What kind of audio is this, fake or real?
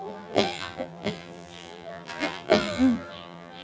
fake